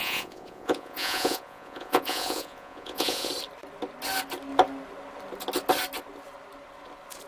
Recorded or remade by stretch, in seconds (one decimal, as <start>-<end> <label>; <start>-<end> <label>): 0.0-3.3 remade; 3.3-7.3 recorded